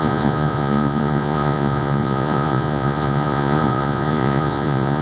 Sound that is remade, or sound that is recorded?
remade